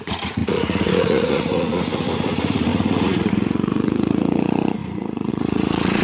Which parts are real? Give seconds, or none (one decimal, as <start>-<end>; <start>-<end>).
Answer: none